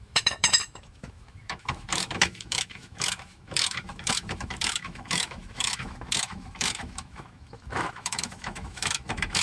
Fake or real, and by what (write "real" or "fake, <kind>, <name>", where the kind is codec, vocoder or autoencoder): fake, autoencoder, DAC-VAE